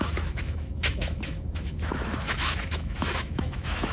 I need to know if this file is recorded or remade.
remade